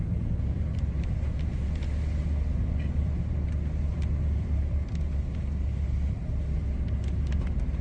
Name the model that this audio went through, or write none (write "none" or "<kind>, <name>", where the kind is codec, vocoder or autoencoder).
none